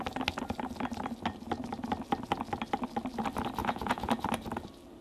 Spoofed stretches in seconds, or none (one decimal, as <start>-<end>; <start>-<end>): 3.6-4.1